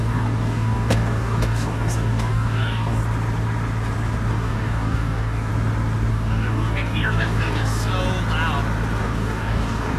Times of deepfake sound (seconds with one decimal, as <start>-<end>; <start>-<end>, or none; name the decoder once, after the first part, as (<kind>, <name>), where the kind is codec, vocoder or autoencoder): 0.0-3.0 (codec, DAC); 4.3-5.5; 6.1-7.9; 9.0-10.0